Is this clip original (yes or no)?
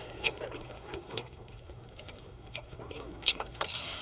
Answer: no